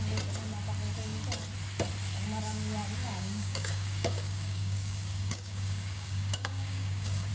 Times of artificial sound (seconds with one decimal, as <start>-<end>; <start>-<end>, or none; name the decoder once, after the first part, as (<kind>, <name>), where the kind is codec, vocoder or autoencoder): 3.0-7.3 (codec, DAC)